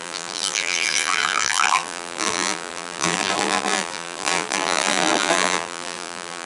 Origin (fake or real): fake